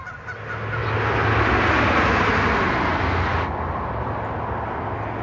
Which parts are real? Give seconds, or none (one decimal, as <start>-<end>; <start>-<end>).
0.0-5.2